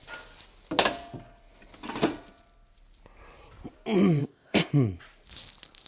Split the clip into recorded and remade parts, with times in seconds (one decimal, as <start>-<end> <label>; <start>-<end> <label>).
0.0-4.2 recorded; 4.2-4.7 remade; 4.7-5.9 recorded